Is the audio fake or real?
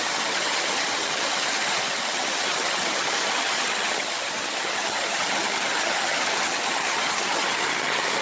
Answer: fake